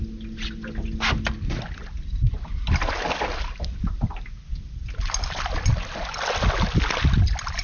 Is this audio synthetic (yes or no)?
no